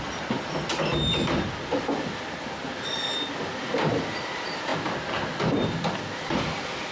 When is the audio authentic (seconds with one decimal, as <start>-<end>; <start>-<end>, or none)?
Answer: 0.0-6.9